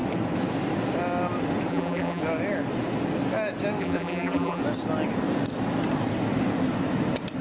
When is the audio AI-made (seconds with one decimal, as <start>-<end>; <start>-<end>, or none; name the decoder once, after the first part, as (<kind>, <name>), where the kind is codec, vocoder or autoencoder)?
1.7-2.2 (vocoder, BigVGAN v2); 3.8-4.6